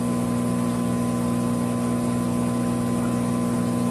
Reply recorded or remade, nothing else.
recorded